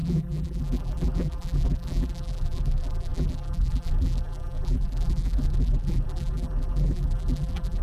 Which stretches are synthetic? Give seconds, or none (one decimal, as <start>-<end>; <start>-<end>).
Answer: 0.0-7.8